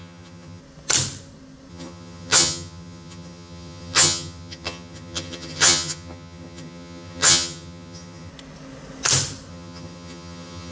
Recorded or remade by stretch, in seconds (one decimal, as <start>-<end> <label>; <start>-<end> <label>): 0.0-0.6 remade; 0.6-1.7 recorded; 1.7-8.3 remade; 8.3-9.5 recorded; 9.5-10.7 remade